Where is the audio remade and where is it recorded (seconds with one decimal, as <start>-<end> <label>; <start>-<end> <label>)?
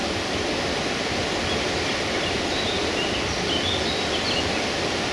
0.0-5.1 recorded